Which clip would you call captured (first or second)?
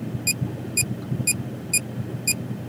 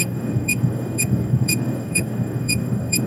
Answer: first